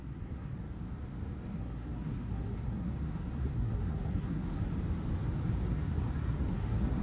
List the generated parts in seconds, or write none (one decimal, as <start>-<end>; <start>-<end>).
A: 0.0-0.5; 1.5-4.6; 5.7-7.0